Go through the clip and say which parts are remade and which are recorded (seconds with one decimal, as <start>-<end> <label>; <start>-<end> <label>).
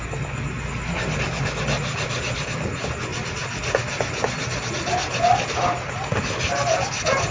0.0-7.3 recorded